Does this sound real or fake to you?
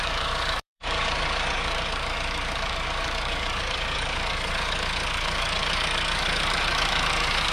fake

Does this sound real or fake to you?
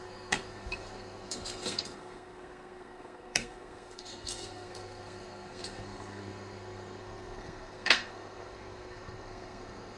fake